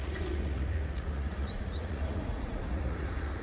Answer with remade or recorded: remade